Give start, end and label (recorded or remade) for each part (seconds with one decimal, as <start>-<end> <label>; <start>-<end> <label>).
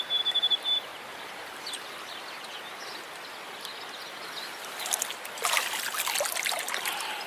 0.0-7.3 recorded